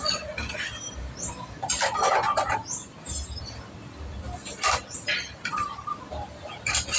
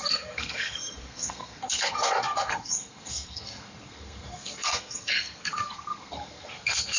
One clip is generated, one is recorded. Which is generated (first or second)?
second